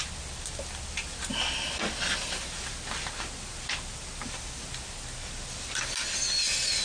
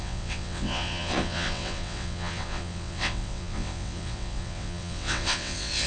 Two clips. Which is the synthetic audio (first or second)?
second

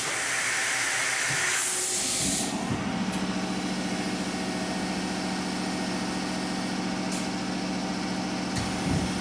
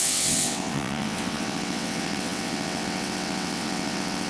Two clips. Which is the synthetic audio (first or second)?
second